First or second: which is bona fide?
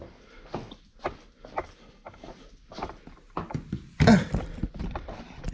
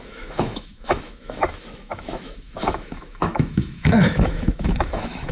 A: first